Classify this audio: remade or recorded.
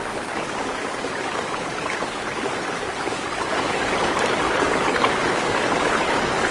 remade